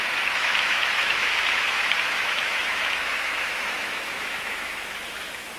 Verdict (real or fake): fake